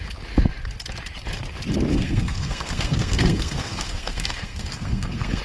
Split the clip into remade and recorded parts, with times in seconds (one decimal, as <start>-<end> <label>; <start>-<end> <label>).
0.0-1.9 recorded; 1.9-5.4 remade